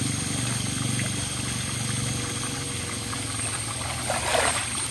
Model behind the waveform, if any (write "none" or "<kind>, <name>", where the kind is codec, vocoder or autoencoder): none